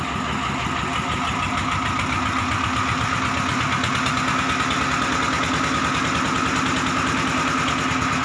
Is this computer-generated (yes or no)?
no